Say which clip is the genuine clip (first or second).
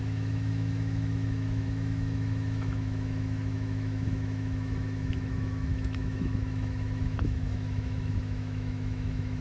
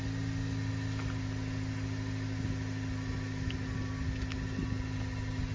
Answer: second